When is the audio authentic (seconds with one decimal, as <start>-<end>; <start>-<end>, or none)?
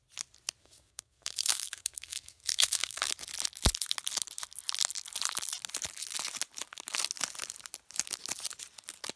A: 0.0-0.6; 3.1-9.2